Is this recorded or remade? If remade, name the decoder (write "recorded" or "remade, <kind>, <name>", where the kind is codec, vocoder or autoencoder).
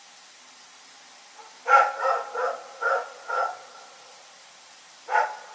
recorded